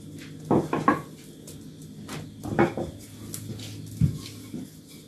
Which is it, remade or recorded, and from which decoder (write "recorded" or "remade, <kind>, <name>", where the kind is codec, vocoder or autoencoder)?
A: recorded